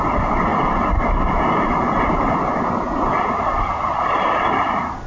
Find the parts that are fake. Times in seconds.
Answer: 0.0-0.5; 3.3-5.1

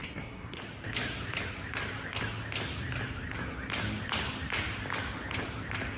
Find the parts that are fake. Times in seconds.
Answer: 0.0-0.6

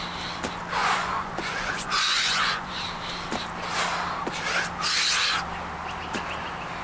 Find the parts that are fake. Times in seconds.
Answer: 0.8-2.8

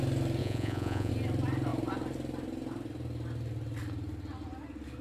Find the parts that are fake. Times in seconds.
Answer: 0.4-1.1

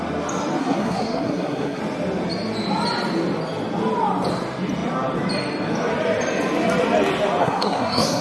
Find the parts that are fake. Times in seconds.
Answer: 0.6-1.8; 7.4-8.2

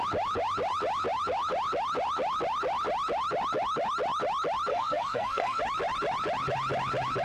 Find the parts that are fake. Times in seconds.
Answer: 4.7-5.6

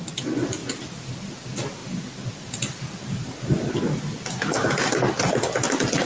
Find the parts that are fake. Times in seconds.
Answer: none

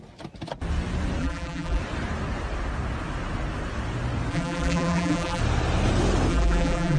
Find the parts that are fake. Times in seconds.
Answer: 1.2-1.8; 4.3-5.4; 6.3-7.0